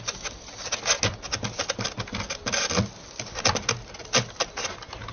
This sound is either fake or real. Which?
real